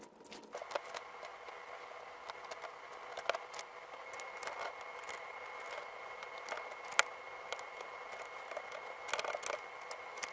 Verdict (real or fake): real